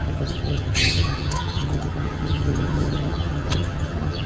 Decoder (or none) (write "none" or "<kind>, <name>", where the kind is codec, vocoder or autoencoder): vocoder, HiFi-GAN